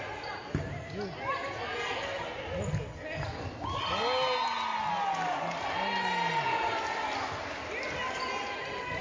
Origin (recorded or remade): recorded